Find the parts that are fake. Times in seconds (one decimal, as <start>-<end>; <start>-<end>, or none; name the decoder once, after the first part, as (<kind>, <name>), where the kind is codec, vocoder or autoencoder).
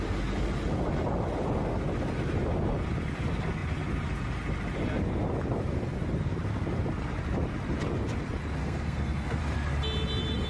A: 8.6-9.4 (codec, SNAC)